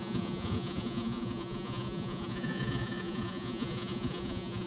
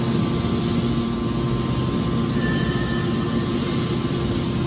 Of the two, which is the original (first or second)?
second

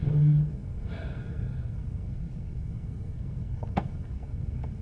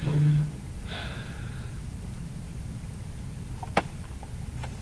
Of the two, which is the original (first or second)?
second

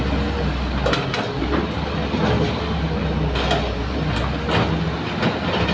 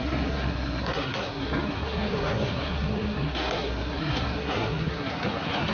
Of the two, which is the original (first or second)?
first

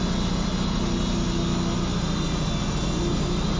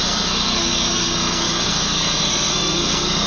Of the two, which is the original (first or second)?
first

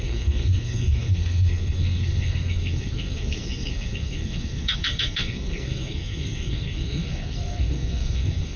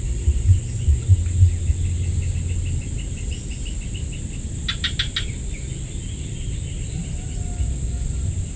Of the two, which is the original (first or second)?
second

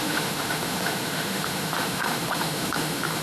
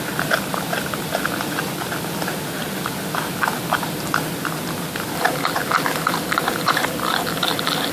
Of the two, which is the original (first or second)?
second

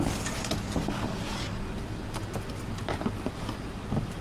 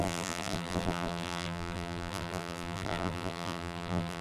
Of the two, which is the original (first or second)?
first